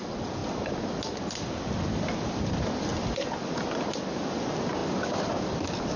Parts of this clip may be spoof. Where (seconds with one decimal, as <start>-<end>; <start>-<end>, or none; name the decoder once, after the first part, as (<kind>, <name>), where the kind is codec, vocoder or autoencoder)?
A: none